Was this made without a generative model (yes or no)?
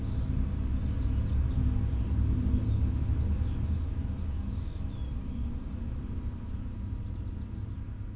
yes